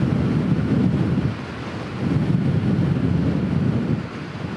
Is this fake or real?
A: real